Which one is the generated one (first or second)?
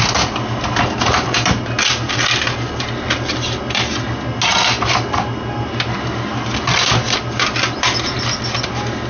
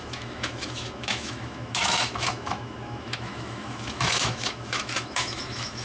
second